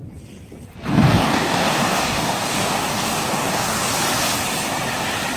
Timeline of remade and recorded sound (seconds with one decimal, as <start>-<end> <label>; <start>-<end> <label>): 0.0-1.1 recorded; 1.1-3.9 remade; 3.9-5.4 recorded